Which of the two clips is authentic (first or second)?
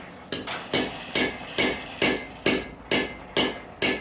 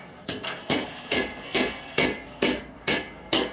first